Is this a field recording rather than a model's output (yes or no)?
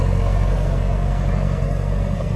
no